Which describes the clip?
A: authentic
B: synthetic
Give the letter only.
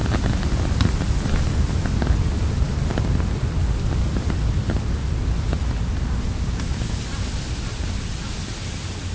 A